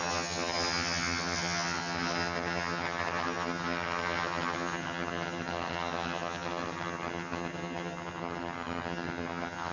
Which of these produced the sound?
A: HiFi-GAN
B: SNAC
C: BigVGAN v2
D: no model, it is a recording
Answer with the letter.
A